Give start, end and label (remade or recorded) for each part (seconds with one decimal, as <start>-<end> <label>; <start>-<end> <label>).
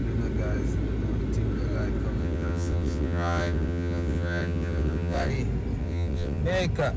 0.0-2.2 recorded; 2.2-5.3 remade; 5.3-5.8 recorded; 5.8-6.4 remade; 6.4-7.0 recorded